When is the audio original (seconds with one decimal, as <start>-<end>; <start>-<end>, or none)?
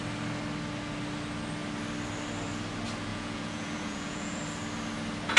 0.0-3.1; 4.4-5.4